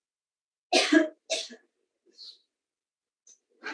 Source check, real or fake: real